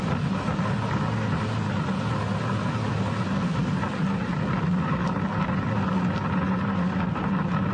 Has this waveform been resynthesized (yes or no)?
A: no